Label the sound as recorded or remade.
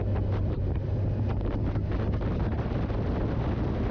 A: recorded